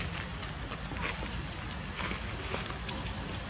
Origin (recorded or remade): recorded